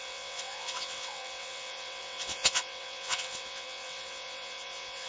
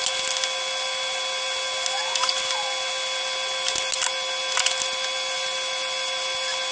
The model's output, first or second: first